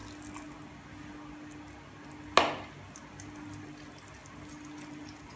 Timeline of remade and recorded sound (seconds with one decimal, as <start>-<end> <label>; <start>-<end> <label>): 0.0-5.4 recorded